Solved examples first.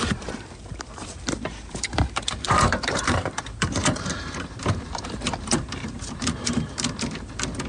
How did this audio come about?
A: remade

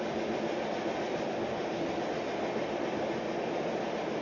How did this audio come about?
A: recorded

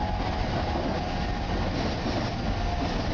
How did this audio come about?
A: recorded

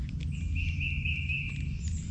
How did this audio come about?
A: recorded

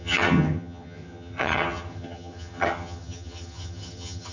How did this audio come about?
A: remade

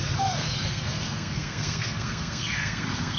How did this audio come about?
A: remade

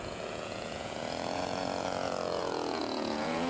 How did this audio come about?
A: remade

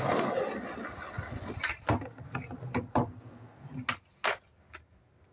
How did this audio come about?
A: recorded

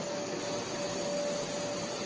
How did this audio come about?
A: recorded